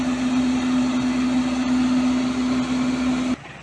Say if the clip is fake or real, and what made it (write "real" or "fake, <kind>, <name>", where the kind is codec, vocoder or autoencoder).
real